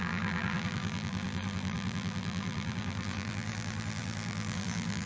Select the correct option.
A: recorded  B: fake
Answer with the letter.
B